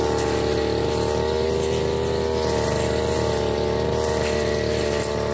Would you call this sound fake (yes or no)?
no